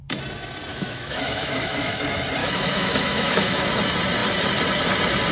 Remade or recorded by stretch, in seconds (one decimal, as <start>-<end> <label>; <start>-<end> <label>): 0.0-0.7 recorded; 0.7-2.0 remade; 2.0-2.4 recorded; 2.4-3.7 remade; 3.7-5.3 recorded